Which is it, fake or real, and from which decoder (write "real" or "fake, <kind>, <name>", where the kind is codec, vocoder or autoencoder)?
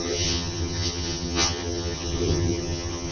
fake, vocoder, HiFi-GAN